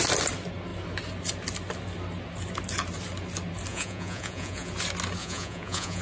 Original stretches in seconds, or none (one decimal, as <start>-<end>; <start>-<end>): 0.0-3.7; 4.7-5.2